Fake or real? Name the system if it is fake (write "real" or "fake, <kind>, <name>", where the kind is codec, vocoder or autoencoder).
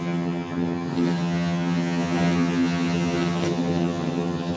fake, vocoder, HiFi-GAN